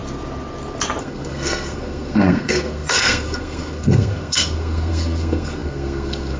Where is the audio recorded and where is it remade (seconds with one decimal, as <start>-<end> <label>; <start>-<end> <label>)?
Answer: 0.0-1.0 recorded; 1.0-6.4 remade